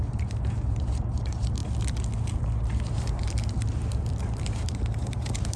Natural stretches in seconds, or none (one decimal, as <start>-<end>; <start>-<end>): 1.6-2.9